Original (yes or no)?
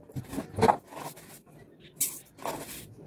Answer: yes